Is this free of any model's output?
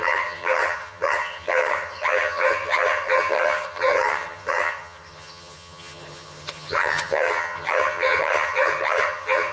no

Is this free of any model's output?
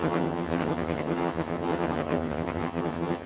no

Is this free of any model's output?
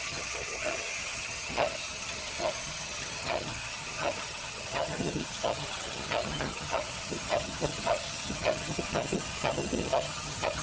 no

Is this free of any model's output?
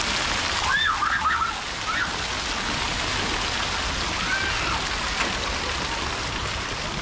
yes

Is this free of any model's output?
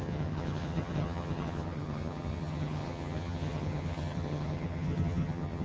no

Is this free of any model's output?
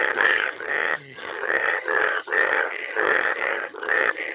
no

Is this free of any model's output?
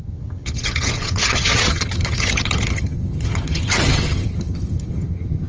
no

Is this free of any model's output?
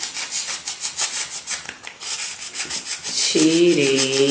yes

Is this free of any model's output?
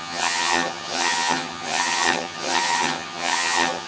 no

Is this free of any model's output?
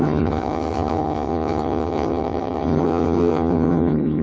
no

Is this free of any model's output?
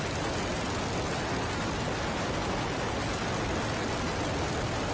yes